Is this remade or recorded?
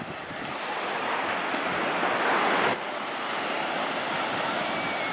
recorded